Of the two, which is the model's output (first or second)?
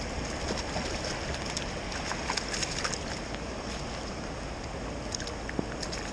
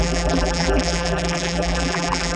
second